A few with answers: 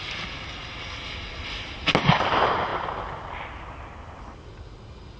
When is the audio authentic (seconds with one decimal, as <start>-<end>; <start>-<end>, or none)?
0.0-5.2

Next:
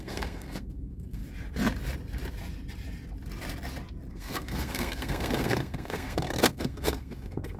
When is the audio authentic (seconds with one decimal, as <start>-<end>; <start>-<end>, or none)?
1.2-4.1

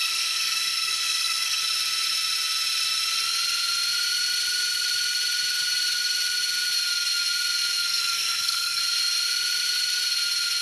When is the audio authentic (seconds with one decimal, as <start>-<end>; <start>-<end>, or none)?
1.6-7.9; 8.8-10.6

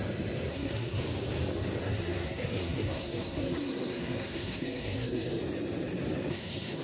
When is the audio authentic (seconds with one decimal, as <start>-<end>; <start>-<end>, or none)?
0.0-0.5; 1.0-1.8; 5.4-6.3